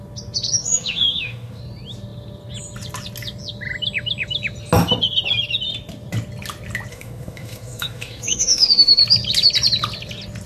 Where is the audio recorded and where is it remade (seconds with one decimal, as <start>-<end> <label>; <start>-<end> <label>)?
0.0-0.6 recorded; 0.6-1.6 remade; 1.6-6.9 recorded; 6.9-9.0 remade; 9.0-10.5 recorded